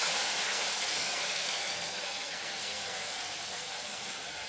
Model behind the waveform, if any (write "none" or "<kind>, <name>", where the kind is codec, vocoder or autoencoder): codec, SNAC